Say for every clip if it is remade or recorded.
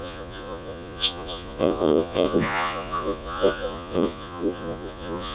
remade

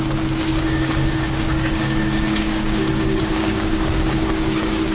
remade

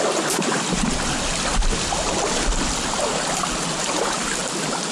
recorded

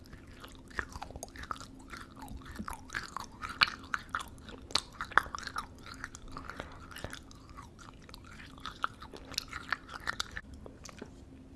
recorded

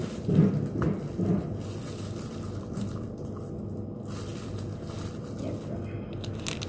recorded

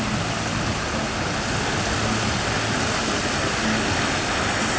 recorded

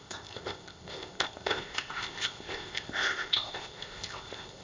remade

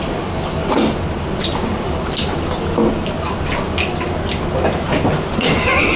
recorded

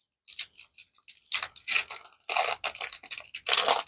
recorded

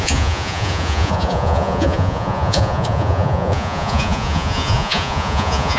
remade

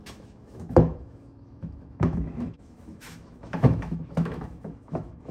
remade